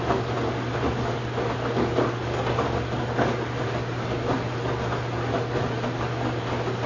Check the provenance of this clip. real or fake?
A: real